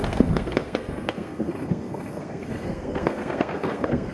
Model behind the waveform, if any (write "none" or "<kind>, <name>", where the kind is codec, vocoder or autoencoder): codec, SNAC